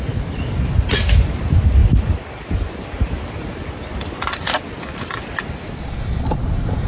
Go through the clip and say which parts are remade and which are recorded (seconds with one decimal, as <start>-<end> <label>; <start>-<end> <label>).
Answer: 0.0-6.9 recorded